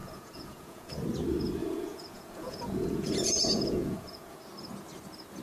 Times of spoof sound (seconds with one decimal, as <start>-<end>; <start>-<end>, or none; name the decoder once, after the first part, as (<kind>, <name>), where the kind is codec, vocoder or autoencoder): 0.0-0.9 (vocoder, Vocos); 1.6-4.4